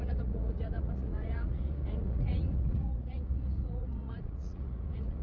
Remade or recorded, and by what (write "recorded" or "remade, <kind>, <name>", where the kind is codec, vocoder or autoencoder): remade, vocoder, Vocos